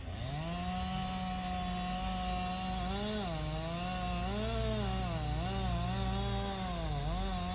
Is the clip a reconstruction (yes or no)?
no